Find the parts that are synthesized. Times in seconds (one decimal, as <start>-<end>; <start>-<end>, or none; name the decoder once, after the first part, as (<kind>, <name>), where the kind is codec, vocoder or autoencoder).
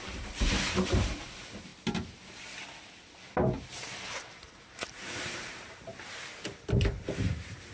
0.0-1.7 (vocoder, BigVGAN v2); 4.1-5.9; 6.8-7.7